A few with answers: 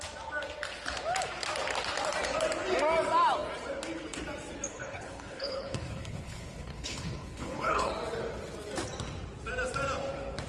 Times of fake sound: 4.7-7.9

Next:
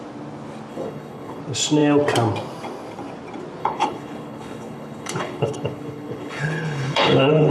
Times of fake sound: 0.7-1.4; 3.6-7.5

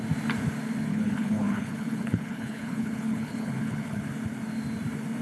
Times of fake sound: 0.9-4.0

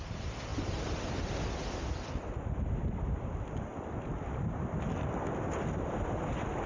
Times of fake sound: none

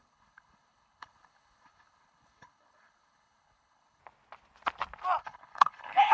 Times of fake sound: 0.0-4.0; 5.2-6.1